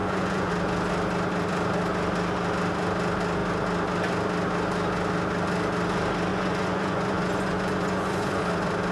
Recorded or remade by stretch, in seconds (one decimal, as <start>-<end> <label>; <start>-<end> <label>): 0.0-0.5 remade; 0.5-6.3 recorded; 6.3-8.4 remade; 8.4-8.9 recorded